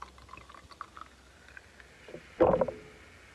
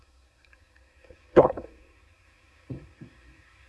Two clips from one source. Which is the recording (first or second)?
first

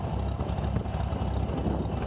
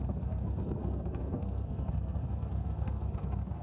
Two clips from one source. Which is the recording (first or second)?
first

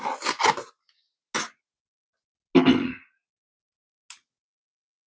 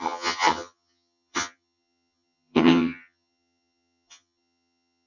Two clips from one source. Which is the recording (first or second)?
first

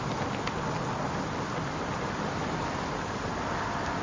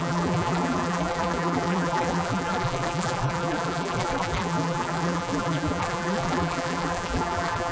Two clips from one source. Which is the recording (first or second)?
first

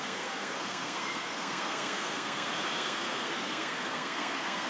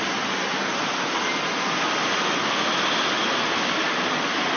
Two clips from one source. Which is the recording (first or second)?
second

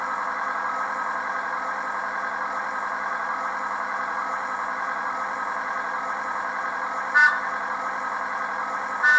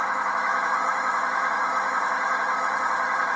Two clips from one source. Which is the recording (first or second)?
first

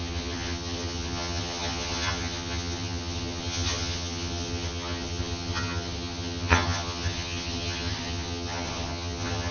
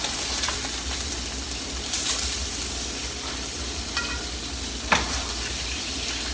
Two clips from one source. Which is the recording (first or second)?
second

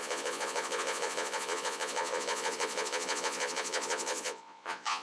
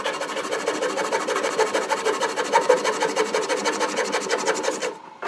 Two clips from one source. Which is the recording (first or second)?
second